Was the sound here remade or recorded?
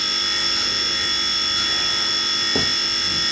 recorded